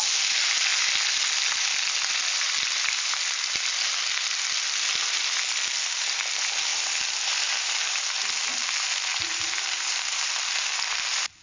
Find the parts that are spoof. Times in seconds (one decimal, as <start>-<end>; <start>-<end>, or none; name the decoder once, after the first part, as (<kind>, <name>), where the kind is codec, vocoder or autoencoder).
6.7-8.2 (vocoder, BigVGAN v2); 9.1-9.6